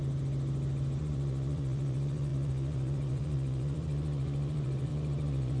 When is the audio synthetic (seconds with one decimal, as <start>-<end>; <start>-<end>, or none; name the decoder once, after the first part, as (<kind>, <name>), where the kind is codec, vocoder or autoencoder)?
1.0-5.6 (vocoder, Vocos)